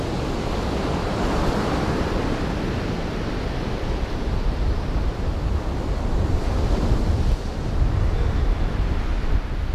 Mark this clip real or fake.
real